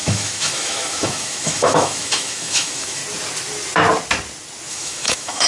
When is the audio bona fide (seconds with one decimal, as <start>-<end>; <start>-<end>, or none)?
3.0-4.7